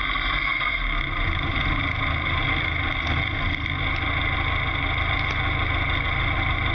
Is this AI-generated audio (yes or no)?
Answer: no